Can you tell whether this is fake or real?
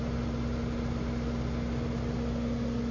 real